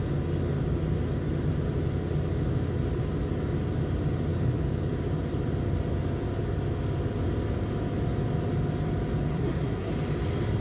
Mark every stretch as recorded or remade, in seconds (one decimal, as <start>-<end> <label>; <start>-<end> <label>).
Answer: 0.0-9.3 recorded; 9.3-9.9 remade; 9.9-10.6 recorded